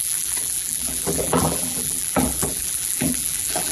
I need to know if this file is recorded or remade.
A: remade